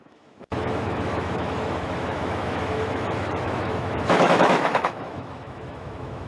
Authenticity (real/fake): fake